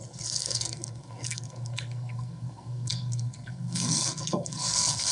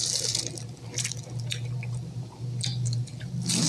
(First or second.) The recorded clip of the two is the second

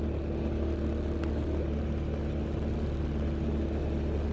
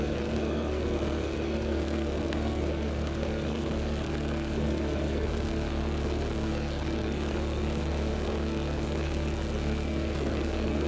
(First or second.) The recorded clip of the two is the first